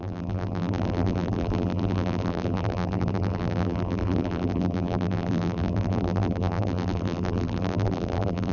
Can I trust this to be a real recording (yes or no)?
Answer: no